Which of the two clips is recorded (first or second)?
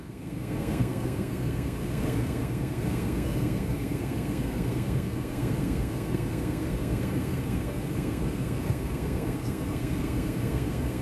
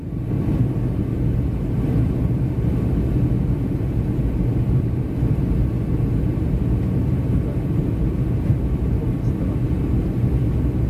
second